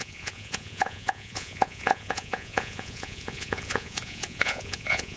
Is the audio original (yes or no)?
no